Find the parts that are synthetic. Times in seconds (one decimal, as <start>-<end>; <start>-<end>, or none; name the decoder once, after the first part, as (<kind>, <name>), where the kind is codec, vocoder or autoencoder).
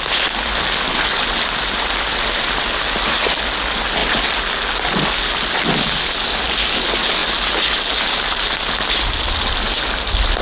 none